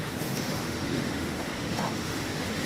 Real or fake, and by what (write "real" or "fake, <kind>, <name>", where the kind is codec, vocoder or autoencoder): fake, autoencoder, DAC-VAE